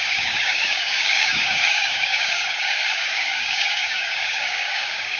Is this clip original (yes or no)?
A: no